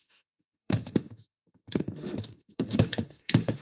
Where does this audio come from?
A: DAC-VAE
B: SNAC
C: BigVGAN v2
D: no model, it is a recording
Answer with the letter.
A